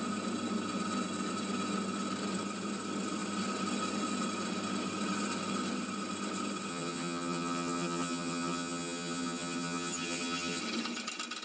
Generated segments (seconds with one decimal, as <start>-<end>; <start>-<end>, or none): 6.7-10.6